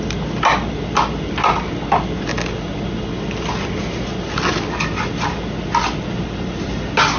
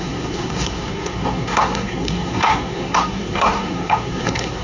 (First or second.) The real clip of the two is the first